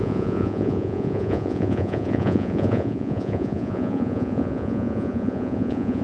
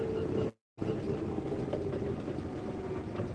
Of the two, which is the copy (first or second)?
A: first